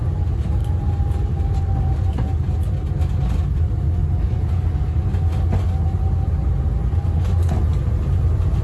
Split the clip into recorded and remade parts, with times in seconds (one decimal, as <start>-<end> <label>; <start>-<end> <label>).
0.0-2.3 remade; 2.3-3.5 recorded; 3.5-4.0 remade; 4.0-7.6 recorded; 7.6-8.6 remade